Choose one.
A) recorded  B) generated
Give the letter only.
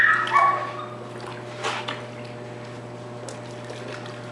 A